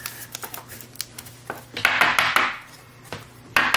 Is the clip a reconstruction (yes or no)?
no